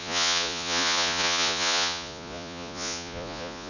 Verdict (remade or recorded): remade